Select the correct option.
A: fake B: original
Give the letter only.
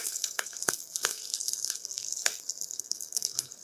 A